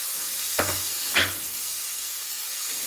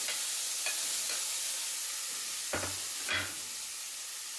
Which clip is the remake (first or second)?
first